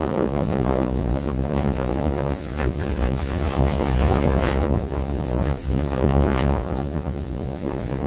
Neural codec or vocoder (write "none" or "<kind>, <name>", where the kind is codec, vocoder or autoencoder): vocoder, Vocos